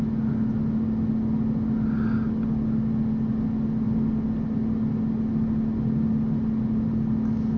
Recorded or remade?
recorded